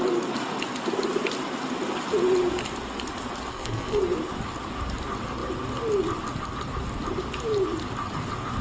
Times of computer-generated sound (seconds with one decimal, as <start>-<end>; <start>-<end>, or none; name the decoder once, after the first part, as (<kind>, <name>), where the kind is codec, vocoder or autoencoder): 3.5-4.0 (codec, SNAC)